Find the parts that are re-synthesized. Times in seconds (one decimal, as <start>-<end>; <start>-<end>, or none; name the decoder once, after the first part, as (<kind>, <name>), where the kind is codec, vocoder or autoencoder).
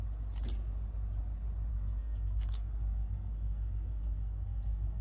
1.7-5.0 (codec, SNAC)